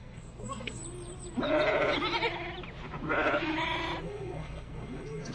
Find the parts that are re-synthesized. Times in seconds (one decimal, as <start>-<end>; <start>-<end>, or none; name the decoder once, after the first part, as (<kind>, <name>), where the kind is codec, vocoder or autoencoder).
0.0-0.8 (codec, SNAC); 4.0-5.3